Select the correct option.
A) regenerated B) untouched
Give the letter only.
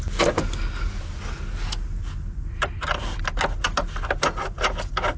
B